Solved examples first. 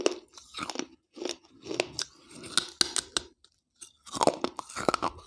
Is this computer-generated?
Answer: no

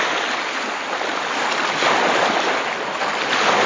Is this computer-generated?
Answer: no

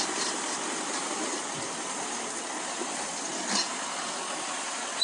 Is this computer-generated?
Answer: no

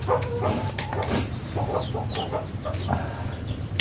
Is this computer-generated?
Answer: no